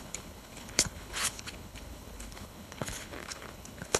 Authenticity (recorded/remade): remade